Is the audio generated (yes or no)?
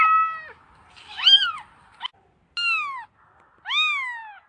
no